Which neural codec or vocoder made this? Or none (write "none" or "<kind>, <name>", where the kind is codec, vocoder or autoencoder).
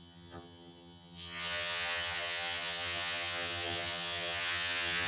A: vocoder, HiFi-GAN